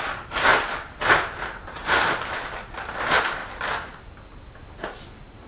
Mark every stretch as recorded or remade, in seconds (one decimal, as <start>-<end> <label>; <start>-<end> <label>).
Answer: 0.0-1.8 recorded; 1.8-2.6 remade; 2.6-5.5 recorded